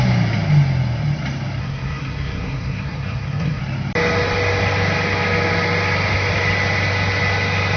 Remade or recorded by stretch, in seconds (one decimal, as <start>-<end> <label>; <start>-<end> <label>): 0.0-1.6 recorded; 1.6-3.6 remade; 3.6-7.8 recorded